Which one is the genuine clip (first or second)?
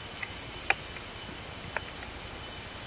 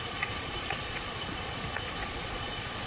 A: first